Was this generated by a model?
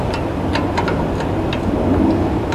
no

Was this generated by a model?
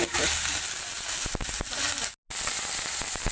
no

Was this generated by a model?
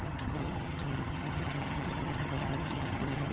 yes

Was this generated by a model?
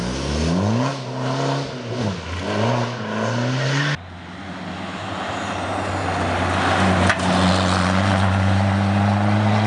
no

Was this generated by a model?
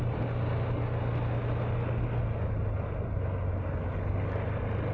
no